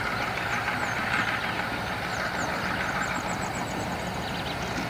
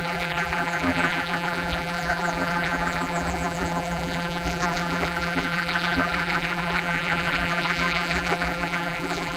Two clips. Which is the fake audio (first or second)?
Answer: second